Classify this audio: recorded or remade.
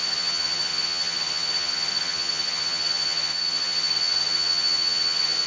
remade